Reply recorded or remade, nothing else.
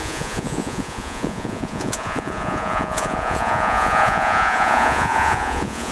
remade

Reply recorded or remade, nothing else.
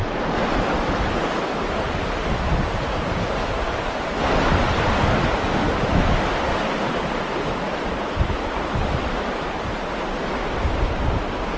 recorded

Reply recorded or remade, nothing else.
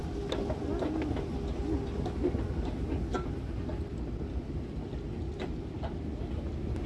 recorded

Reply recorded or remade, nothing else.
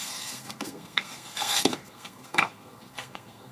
remade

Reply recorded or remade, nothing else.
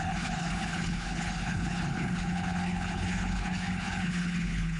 remade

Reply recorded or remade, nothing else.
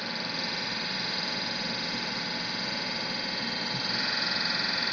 recorded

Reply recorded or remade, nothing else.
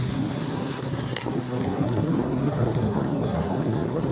remade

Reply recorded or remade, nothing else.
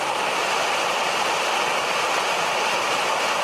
recorded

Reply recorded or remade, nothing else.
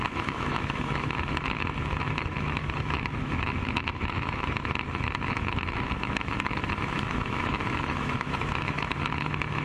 remade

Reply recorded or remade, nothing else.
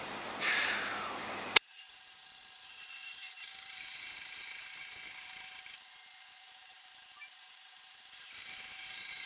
remade